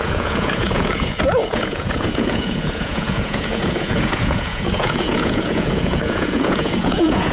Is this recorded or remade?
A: remade